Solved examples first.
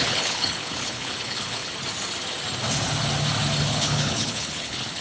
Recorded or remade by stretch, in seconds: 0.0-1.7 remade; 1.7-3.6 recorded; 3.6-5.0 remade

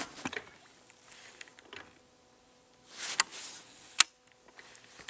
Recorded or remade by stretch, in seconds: 0.0-5.1 recorded